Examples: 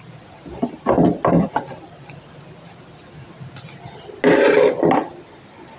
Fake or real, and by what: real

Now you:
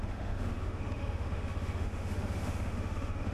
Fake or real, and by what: fake, autoencoder, DAC-VAE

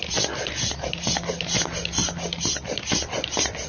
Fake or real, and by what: real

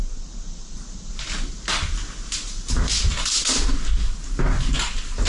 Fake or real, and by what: real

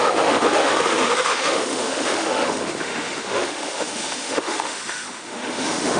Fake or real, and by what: fake, autoencoder, DAC-VAE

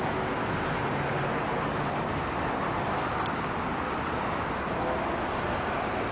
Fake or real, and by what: real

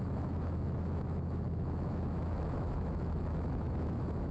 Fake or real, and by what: fake, autoencoder, DAC-VAE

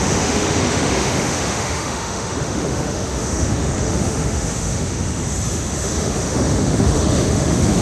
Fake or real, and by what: fake, autoencoder, DAC-VAE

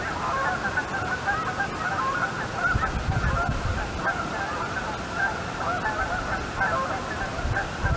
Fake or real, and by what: real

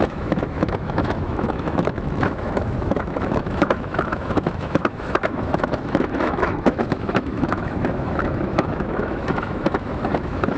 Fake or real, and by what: fake, autoencoder, DAC-VAE